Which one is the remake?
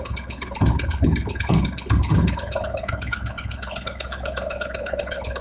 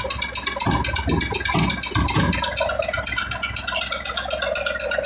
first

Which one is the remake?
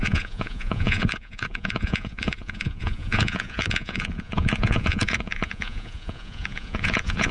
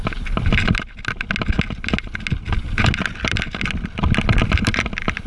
first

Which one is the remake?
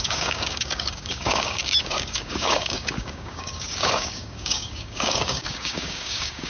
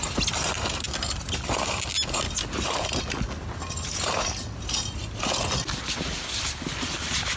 first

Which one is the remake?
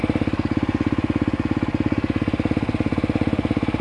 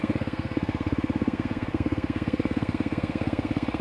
second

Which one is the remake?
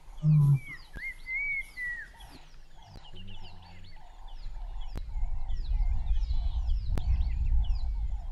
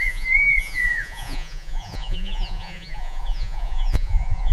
second